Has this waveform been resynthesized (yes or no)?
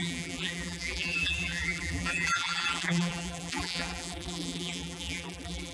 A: yes